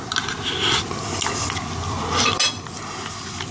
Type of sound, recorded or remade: recorded